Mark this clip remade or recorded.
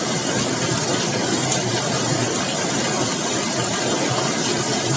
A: recorded